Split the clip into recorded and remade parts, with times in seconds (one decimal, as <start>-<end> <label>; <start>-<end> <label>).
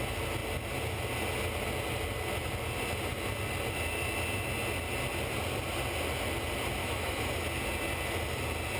0.0-6.8 recorded; 6.8-7.3 remade; 7.3-8.8 recorded